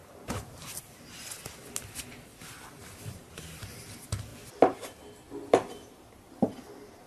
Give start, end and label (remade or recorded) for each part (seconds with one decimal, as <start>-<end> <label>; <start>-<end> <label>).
0.0-0.7 remade; 0.7-2.3 recorded; 2.3-3.8 remade; 3.8-7.1 recorded